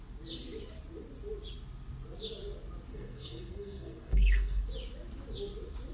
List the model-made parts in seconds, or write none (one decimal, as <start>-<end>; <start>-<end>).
2.9-4.6